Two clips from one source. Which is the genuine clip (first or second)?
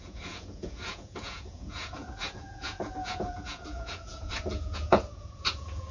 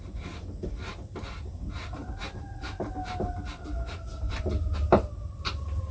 second